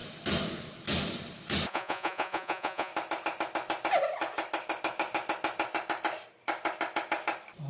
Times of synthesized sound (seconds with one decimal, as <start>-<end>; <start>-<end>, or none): 1.7-2.9